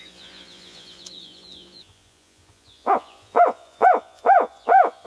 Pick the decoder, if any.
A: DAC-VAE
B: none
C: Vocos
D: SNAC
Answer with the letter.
C